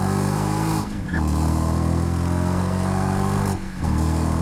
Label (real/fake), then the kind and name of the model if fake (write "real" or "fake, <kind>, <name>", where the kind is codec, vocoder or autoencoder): fake, codec, SNAC